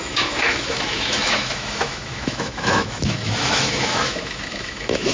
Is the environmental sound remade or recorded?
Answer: remade